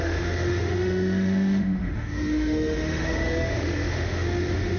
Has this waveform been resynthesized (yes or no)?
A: yes